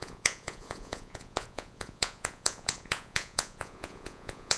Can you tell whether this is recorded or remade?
remade